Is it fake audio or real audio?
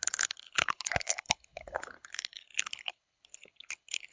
fake